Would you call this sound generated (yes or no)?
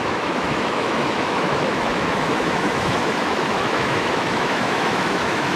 yes